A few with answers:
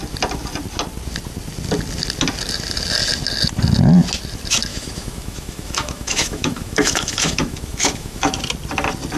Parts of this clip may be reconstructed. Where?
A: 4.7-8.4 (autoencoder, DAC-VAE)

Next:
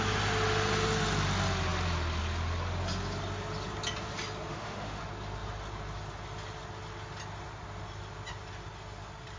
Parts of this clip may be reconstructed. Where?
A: 4.5-5.0 (autoencoder, DAC-VAE)